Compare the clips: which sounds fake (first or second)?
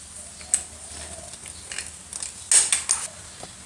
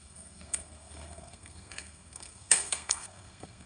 second